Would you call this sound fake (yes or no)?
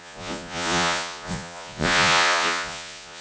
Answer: yes